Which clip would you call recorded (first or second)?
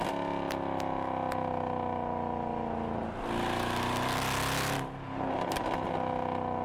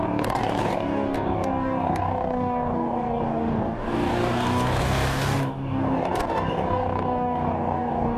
first